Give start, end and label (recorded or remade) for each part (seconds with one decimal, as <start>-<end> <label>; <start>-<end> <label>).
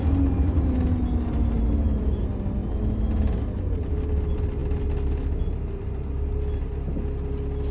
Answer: 0.0-7.7 recorded